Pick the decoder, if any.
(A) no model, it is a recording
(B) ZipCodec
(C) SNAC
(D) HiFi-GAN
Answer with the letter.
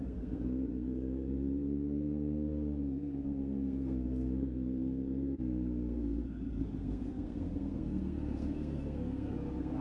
C